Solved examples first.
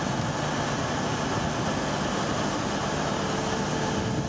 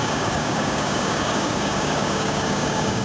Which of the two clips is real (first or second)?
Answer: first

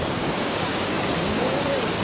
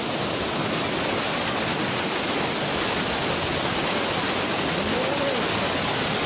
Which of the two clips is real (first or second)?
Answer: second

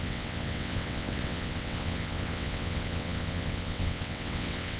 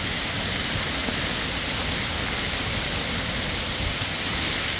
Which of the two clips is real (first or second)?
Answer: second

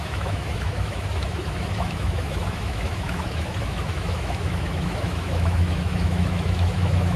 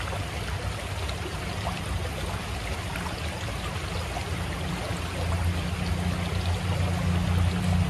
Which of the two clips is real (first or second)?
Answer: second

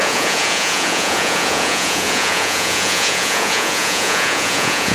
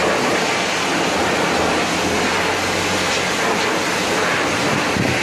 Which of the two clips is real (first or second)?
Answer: second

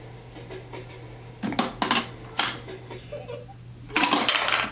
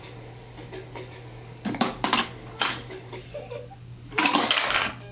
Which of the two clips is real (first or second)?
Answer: first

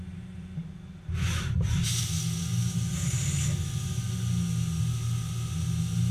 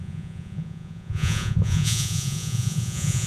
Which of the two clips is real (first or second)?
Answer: first